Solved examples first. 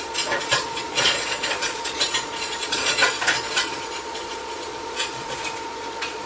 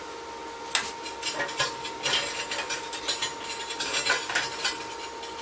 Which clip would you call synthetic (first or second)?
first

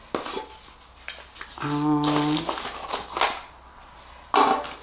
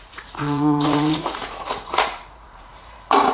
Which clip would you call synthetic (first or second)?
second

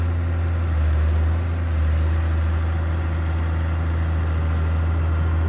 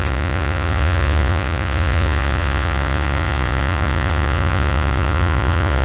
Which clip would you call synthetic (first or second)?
second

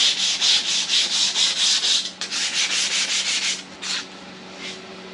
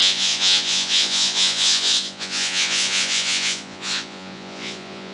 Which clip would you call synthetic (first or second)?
second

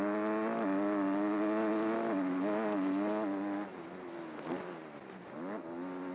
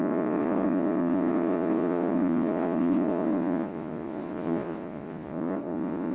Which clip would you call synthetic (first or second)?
second